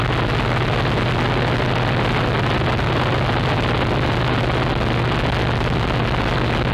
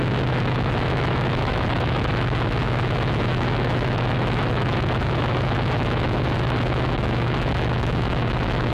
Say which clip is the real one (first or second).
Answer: first